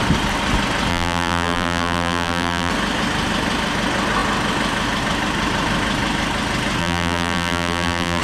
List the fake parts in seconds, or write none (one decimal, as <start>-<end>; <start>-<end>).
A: 0.9-2.7; 6.8-8.2